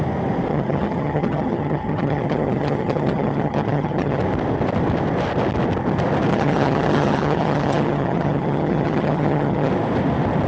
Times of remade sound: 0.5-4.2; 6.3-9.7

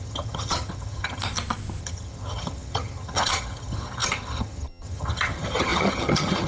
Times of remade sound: 0.0-1.2; 1.8-6.5

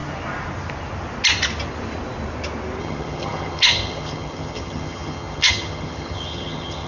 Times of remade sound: 2.8-6.9

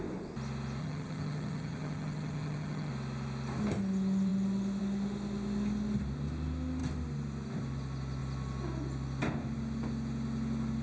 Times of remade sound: 0.8-2.9

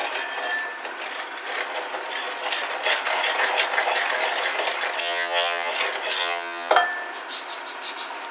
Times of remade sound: 5.0-5.7; 6.2-6.7

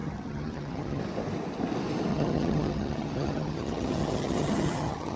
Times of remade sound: 0.0-1.0; 2.1-5.2

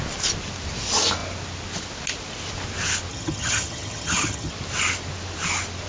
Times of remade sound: 3.1-4.5